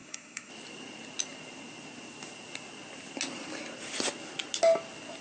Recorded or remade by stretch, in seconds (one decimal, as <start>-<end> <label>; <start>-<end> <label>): 0.0-0.5 remade; 0.5-5.2 recorded